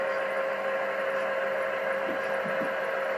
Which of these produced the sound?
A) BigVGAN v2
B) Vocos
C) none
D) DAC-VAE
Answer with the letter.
C